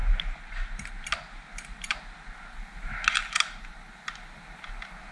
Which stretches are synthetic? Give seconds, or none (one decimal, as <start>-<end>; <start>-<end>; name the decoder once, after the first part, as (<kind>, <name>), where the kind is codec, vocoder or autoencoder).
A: none